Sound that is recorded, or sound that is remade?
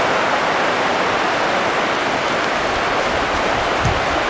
recorded